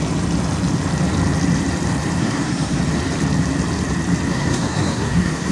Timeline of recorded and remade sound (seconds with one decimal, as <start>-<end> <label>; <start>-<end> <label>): 0.0-2.2 recorded; 2.2-2.8 remade; 2.8-4.3 recorded; 4.3-5.5 remade